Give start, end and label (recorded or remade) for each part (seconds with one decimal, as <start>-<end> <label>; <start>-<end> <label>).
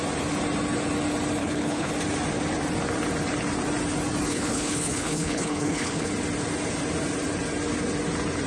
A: 0.0-1.4 recorded; 1.4-1.9 remade; 1.9-4.3 recorded; 4.3-6.1 remade; 6.1-8.5 recorded